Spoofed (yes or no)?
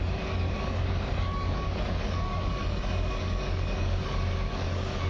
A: yes